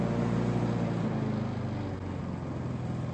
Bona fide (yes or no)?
yes